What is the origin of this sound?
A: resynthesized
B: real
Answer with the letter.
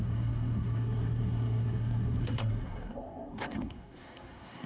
A